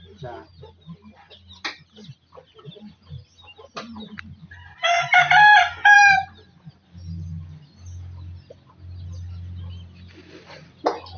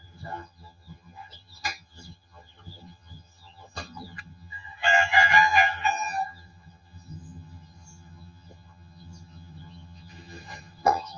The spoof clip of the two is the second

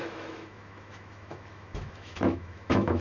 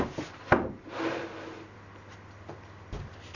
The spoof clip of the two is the first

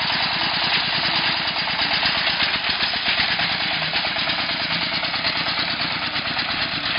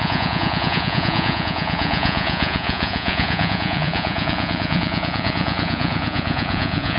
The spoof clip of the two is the second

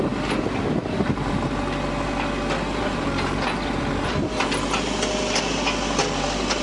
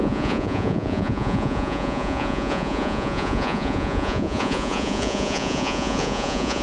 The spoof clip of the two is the second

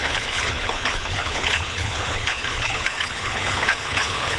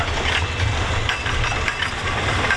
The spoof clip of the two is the first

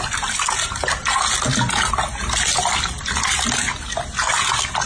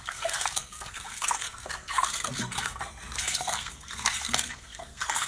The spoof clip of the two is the second